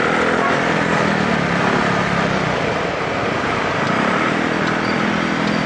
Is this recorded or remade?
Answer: remade